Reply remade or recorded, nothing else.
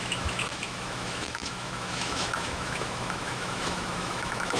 remade